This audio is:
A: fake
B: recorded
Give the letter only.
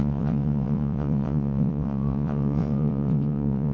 A